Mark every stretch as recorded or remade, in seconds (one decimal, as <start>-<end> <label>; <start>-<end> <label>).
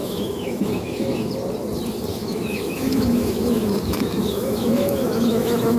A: 0.0-1.3 remade; 1.3-2.1 recorded; 2.1-5.8 remade